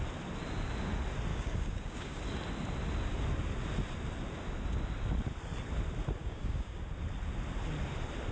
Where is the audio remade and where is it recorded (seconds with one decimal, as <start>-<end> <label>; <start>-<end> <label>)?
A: 0.0-1.3 recorded; 1.3-2.2 remade; 2.2-6.2 recorded; 6.2-6.8 remade; 6.8-8.3 recorded